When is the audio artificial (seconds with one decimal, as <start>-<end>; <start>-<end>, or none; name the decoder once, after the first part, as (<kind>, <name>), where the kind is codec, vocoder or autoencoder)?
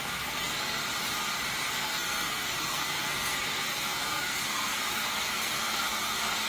0.0-0.8 (codec, SNAC); 1.6-6.5